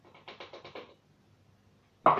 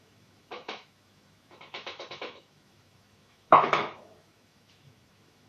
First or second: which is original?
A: first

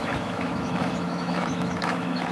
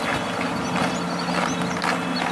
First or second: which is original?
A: second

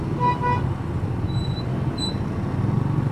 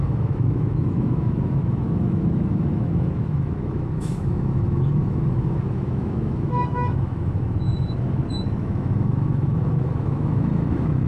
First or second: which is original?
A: first